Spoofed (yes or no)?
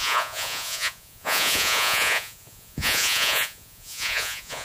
yes